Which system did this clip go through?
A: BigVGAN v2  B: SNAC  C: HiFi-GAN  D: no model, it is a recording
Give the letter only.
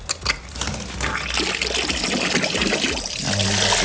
D